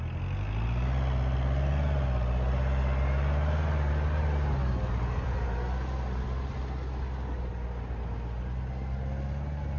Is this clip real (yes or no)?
yes